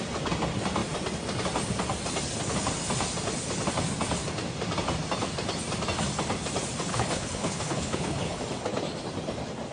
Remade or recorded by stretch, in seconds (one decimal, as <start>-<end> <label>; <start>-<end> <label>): 0.0-6.9 recorded; 6.9-8.4 remade; 8.4-9.7 recorded